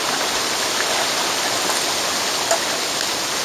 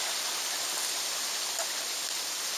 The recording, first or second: first